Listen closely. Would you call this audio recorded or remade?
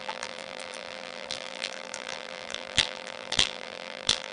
remade